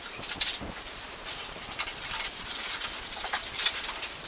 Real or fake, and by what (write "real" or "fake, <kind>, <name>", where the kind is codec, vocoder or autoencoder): real